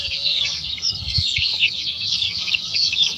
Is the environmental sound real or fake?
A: fake